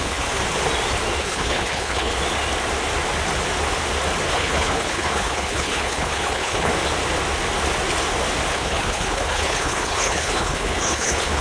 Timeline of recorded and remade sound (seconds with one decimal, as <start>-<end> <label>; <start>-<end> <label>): 0.0-0.4 remade; 0.4-1.2 recorded; 1.2-2.1 remade; 2.1-4.3 recorded; 4.3-6.7 remade; 6.7-8.5 recorded; 8.5-11.4 remade